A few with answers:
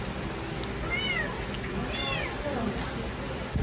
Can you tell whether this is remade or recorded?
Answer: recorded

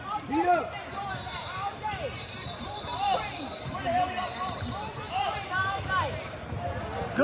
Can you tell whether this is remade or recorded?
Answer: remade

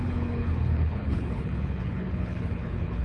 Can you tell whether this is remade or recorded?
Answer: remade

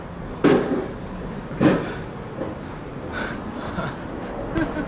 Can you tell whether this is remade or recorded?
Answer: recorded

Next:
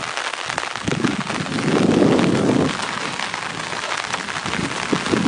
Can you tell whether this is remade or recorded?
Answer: recorded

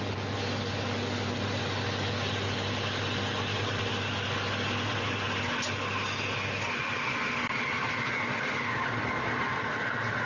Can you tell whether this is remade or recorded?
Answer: recorded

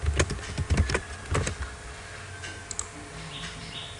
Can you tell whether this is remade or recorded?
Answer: recorded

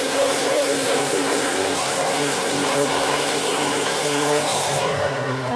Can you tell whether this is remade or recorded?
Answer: remade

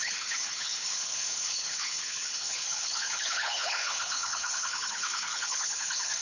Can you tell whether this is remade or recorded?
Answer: remade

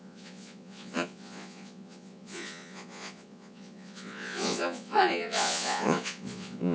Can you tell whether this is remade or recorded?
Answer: remade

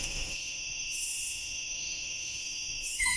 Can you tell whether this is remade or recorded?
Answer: remade